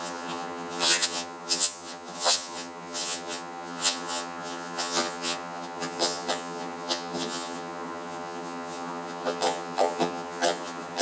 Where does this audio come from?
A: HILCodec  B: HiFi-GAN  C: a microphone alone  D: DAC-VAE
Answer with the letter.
B